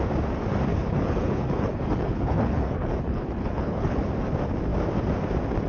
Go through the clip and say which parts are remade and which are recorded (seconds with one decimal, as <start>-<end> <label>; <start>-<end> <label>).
0.0-0.7 recorded; 0.7-4.1 remade; 4.1-5.7 recorded